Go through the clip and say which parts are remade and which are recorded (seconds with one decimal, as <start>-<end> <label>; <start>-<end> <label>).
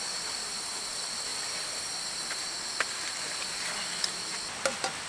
0.0-5.1 recorded